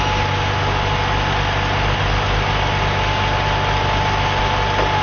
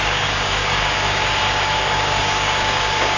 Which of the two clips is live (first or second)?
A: first